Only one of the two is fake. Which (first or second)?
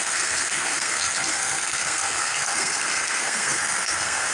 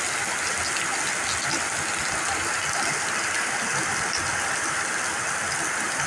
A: first